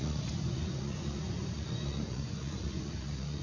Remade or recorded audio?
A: remade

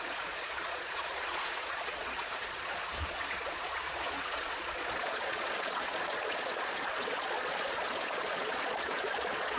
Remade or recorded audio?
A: remade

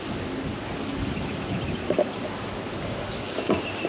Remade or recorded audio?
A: recorded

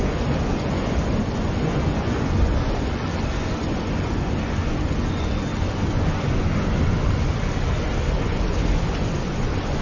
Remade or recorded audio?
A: remade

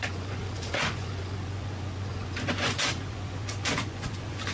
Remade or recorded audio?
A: remade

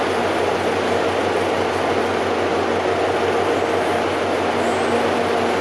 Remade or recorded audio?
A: recorded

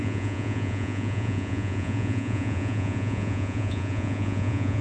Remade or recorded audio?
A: remade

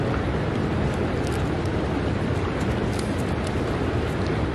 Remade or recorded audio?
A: recorded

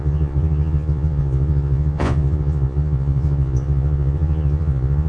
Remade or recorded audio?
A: remade